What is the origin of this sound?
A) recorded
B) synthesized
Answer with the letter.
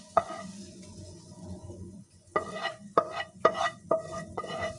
B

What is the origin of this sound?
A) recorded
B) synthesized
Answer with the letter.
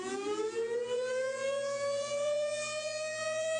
B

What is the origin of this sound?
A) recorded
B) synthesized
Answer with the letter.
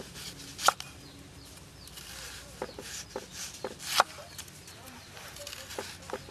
A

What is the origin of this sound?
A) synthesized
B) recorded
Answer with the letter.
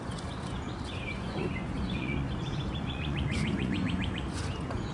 A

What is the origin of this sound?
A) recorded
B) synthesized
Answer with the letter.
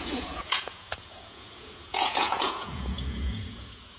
B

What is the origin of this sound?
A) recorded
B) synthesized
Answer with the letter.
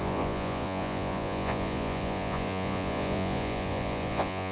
B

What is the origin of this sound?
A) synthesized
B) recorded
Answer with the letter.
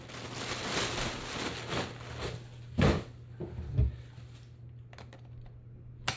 B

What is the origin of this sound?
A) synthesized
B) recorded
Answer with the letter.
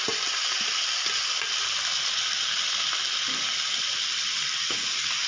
B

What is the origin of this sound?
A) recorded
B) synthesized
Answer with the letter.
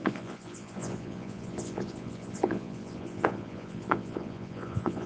B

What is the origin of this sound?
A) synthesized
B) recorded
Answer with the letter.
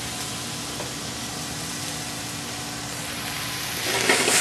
B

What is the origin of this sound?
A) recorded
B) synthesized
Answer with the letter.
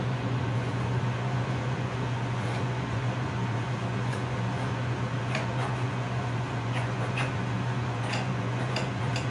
B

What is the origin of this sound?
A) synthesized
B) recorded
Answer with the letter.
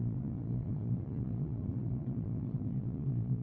A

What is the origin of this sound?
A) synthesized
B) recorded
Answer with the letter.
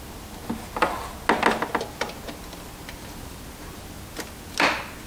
B